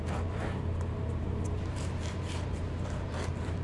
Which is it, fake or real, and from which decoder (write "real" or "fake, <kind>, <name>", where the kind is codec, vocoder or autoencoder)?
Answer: fake, vocoder, BigVGAN v2